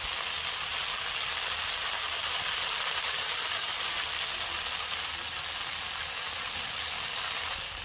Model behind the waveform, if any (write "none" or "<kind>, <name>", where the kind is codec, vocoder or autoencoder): none